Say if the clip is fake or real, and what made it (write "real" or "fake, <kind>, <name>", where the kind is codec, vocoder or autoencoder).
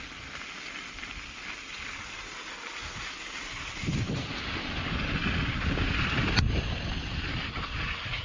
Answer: real